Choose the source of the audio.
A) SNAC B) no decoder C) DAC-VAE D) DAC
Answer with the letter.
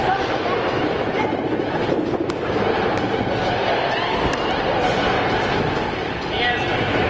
B